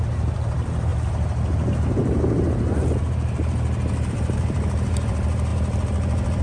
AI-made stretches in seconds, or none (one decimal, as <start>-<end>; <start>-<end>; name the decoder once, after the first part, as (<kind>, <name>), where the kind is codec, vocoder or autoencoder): 0.0-0.9 (vocoder, BigVGAN v2); 4.1-6.4